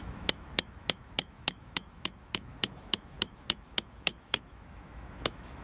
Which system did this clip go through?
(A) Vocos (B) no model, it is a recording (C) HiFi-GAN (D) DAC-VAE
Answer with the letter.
D